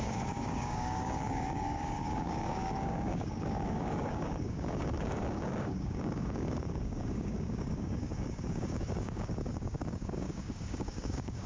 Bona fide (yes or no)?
no